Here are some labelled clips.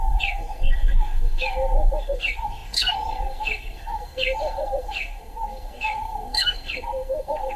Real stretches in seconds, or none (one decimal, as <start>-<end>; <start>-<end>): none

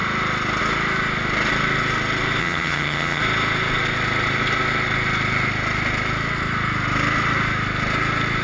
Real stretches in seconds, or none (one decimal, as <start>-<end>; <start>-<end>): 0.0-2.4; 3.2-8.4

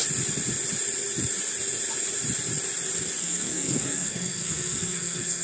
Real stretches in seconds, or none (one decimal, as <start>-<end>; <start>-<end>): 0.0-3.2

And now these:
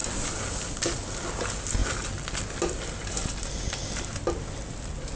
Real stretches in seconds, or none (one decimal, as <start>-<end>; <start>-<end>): 0.0-5.2

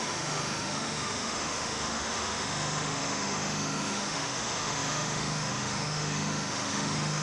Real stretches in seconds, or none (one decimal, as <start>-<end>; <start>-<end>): none

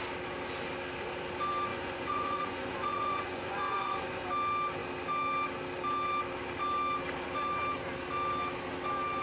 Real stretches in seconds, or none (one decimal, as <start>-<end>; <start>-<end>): 0.0-1.7; 4.2-9.2